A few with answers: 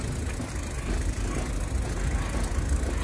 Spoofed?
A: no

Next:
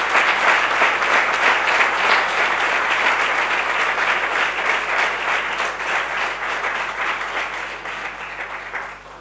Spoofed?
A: no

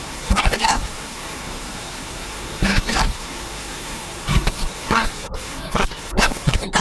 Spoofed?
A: yes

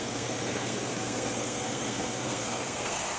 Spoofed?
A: yes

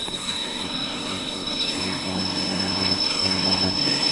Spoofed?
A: yes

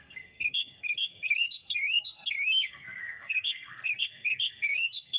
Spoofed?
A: yes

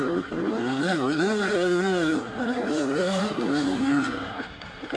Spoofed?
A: yes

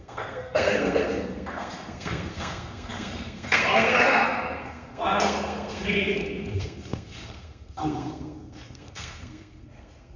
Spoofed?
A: yes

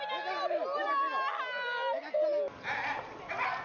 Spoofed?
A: no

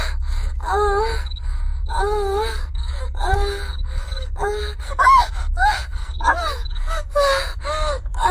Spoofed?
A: yes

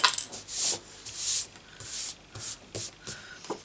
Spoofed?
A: no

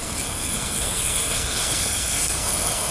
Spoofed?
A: yes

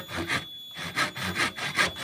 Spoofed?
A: no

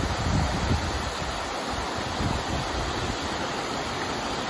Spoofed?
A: no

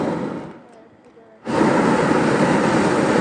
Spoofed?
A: no